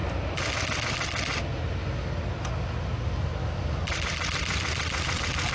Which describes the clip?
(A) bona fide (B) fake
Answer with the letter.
A